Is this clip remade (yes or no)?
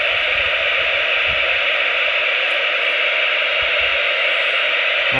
no